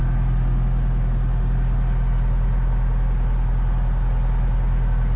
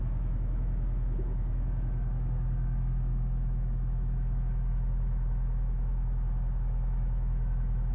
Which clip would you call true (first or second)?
first